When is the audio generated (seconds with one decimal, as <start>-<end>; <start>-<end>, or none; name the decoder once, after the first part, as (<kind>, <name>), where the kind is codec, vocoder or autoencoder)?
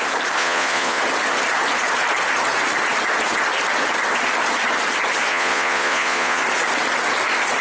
0.4-1.0 (vocoder, Vocos); 5.3-6.4